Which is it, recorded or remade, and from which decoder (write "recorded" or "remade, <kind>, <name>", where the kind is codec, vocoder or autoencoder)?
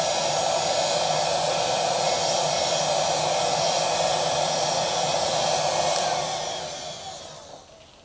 recorded